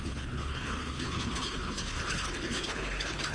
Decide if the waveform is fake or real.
fake